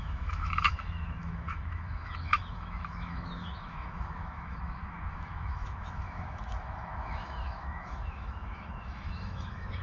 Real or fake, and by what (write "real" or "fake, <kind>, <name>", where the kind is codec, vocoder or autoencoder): fake, autoencoder, DAC-VAE